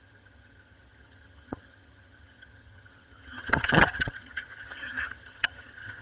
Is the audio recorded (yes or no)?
no